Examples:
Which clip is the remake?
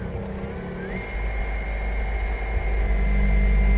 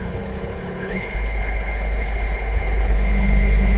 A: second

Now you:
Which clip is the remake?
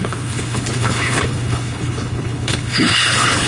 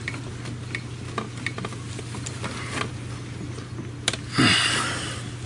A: first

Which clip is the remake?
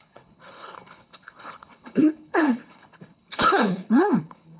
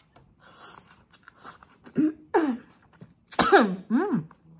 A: first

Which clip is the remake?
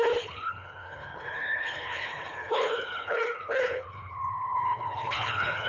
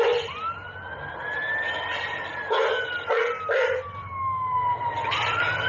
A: first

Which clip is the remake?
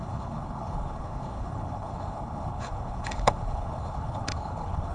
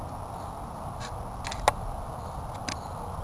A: first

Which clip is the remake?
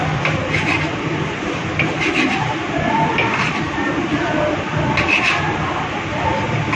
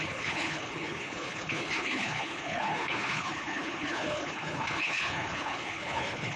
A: second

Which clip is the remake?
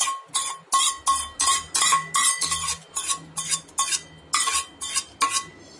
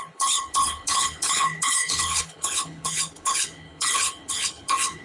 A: second